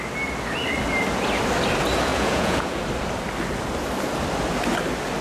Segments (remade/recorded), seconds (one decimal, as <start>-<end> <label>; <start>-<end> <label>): 0.0-2.1 recorded; 2.1-2.8 remade; 2.8-5.2 recorded